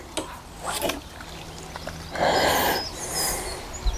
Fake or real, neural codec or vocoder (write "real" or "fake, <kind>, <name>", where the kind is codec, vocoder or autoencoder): real